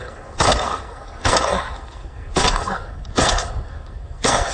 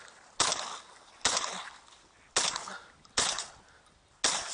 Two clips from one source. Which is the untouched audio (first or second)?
second